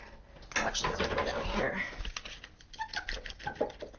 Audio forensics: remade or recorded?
recorded